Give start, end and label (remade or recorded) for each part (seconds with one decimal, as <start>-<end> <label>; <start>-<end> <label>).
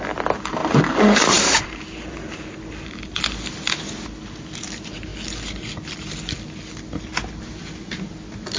0.0-0.6 recorded; 0.6-3.2 remade; 3.2-8.6 recorded